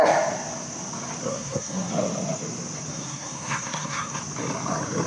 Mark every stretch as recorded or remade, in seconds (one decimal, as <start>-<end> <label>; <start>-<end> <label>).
0.0-1.3 recorded; 1.3-1.9 remade; 1.9-2.9 recorded; 2.9-4.2 remade; 4.2-5.1 recorded